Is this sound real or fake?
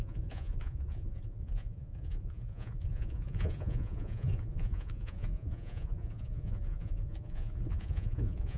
fake